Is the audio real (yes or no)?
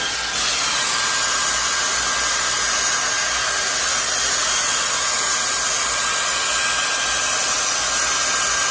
yes